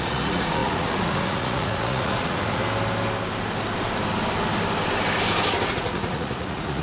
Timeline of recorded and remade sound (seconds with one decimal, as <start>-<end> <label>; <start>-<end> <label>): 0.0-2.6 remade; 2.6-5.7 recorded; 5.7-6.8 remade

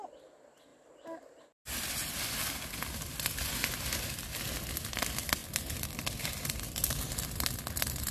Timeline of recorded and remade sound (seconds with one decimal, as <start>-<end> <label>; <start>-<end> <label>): 0.0-0.7 recorded; 0.7-1.4 remade; 1.4-8.1 recorded

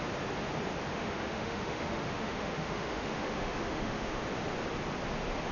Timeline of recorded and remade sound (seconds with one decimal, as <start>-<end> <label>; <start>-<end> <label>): 0.0-0.9 recorded; 0.9-4.2 remade; 4.2-5.5 recorded

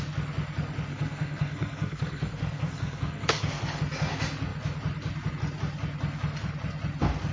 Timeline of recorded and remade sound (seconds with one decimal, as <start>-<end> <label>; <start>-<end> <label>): 0.0-0.9 recorded; 0.9-3.8 remade; 3.8-7.3 recorded

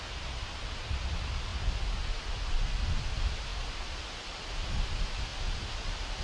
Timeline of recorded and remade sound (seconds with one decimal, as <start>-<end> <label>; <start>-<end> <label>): 0.0-6.2 recorded